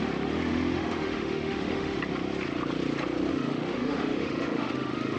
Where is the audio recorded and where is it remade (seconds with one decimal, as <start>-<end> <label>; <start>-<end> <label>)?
0.0-0.5 recorded; 0.5-2.0 remade; 2.0-3.3 recorded; 3.3-5.2 remade